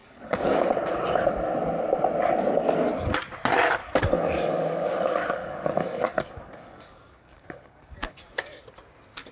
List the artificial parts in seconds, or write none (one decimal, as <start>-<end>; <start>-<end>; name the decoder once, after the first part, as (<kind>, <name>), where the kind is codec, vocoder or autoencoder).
0.0-0.7 (codec, DAC); 3.8-8.6